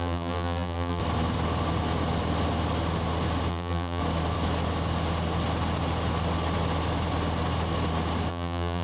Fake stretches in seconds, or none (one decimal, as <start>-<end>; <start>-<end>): 0.0-1.0; 3.5-4.0; 8.3-8.8